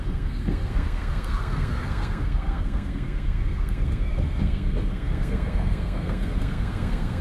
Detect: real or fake fake